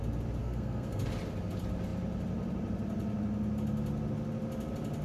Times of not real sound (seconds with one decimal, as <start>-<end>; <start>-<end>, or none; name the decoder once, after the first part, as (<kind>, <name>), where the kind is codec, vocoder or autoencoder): 0.4-1.0 (codec, SNAC)